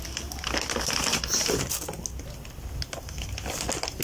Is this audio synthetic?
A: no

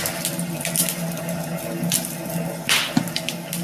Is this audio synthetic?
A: no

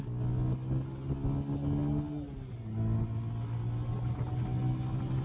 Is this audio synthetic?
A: no